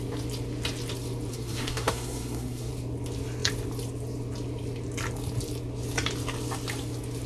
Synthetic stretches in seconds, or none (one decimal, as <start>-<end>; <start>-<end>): 1.3-2.7